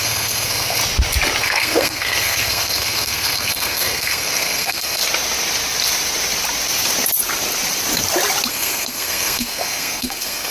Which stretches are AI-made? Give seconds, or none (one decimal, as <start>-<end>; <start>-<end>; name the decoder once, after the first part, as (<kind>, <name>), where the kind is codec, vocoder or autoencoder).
0.0-0.8 (codec, SNAC); 1.4-5.0; 8.5-10.5